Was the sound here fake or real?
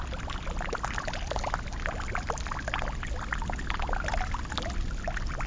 real